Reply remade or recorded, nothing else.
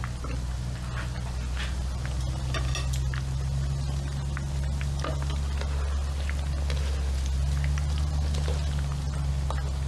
recorded